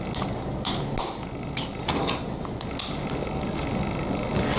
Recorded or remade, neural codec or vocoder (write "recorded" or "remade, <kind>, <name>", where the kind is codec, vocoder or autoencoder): recorded